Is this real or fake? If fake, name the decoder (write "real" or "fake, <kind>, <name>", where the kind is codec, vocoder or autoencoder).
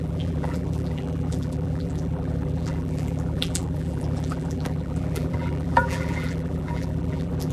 fake, vocoder, BigVGAN v2